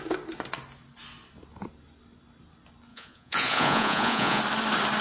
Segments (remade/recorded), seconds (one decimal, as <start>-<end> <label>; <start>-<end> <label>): 0.0-2.9 recorded; 2.9-4.4 remade; 4.4-5.0 recorded